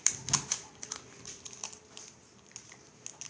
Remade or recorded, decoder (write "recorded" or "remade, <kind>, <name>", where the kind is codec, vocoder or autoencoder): recorded